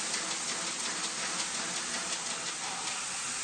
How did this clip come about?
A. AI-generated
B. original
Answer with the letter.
B